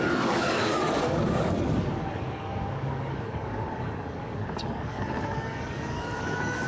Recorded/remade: remade